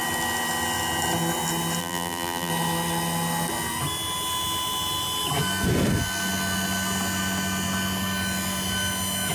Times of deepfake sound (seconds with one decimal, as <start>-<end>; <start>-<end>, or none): 1.8-2.5